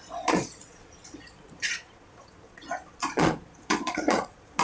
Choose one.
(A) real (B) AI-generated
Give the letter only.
B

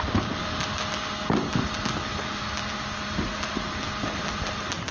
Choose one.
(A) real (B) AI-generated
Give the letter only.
A